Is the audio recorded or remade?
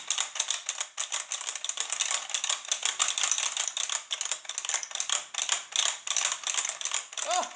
recorded